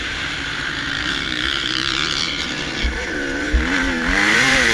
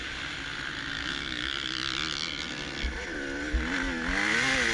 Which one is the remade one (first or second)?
first